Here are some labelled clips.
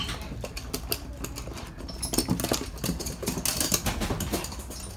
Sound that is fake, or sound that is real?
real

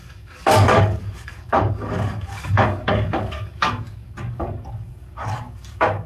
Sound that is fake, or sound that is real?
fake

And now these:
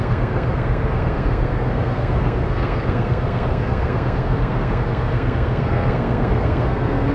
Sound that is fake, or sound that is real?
fake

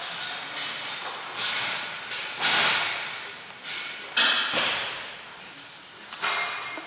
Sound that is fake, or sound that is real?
real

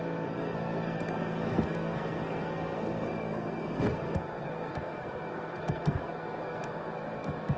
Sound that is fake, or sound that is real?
fake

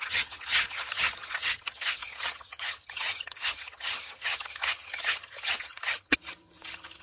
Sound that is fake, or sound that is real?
fake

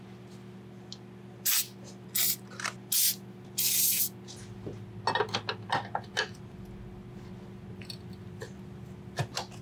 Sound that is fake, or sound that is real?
real